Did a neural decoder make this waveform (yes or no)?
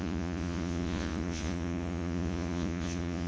yes